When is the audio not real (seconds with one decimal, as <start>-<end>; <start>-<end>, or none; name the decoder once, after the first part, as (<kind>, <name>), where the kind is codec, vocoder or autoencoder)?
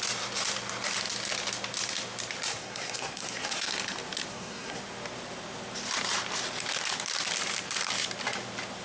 2.5-3.7 (codec, SNAC); 4.3-4.8